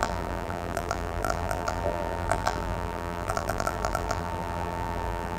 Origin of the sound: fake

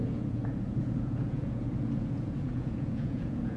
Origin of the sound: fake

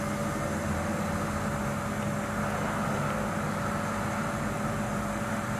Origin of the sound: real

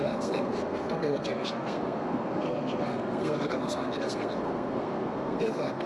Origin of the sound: fake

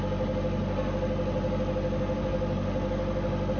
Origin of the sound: real